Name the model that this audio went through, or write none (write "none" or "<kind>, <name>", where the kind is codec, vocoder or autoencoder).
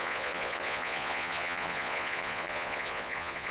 vocoder, Vocos